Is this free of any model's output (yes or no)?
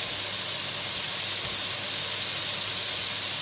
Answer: yes